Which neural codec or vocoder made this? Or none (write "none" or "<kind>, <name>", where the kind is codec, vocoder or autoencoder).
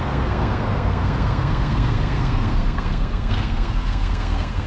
codec, SNAC